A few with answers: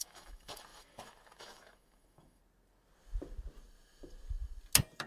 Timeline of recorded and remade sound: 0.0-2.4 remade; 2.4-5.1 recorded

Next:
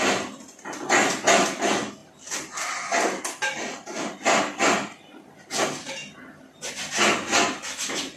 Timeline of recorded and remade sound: 0.0-2.0 recorded; 2.0-4.0 remade; 4.0-8.2 recorded

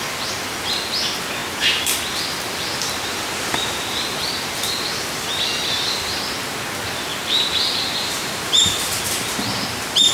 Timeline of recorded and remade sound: 0.0-7.1 recorded; 7.1-9.0 remade; 9.0-10.1 recorded

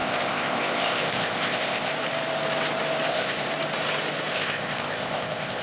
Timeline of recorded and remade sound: 0.0-1.9 remade; 1.9-3.1 recorded; 3.1-3.5 remade; 3.5-4.3 recorded; 4.3-5.6 remade